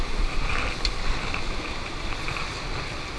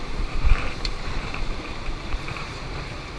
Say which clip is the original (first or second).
first